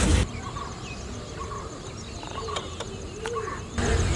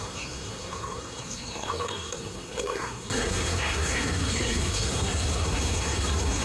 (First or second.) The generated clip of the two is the second